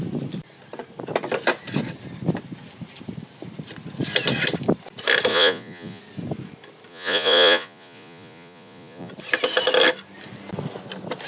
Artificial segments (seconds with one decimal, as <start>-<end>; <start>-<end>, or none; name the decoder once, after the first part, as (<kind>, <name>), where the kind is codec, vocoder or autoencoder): 5.3-6.0 (vocoder, Vocos); 6.9-9.1